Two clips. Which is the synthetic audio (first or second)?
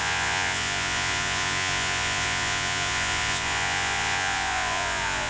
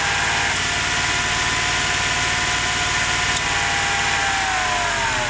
first